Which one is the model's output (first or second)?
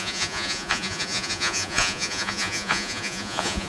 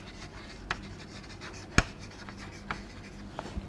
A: first